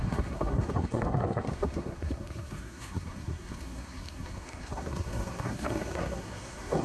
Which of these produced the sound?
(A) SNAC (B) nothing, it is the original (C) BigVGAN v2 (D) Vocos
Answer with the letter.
A